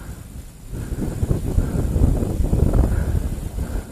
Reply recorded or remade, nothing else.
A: recorded